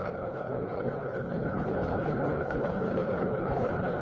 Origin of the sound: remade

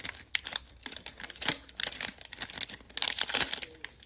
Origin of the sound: recorded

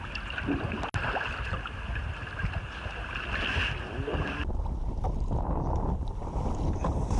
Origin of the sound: recorded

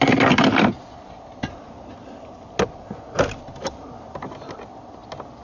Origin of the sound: recorded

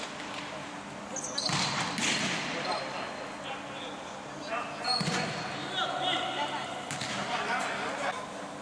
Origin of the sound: recorded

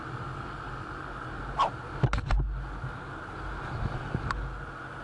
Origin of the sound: recorded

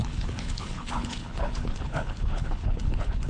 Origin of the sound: remade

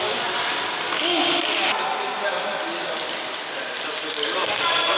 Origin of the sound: recorded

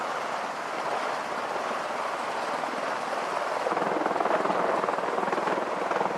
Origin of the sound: recorded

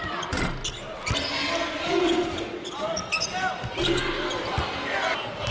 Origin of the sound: recorded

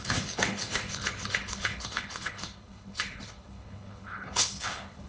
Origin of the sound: remade